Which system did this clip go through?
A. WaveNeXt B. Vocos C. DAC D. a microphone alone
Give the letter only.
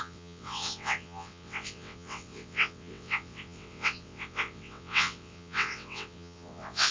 A